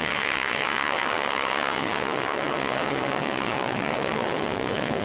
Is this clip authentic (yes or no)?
no